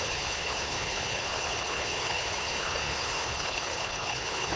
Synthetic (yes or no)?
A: yes